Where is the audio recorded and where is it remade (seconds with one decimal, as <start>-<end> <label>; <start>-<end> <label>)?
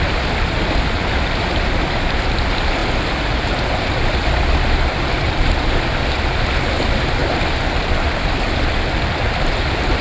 0.0-2.8 remade; 2.8-3.9 recorded; 3.9-7.2 remade; 7.2-9.0 recorded; 9.0-10.0 remade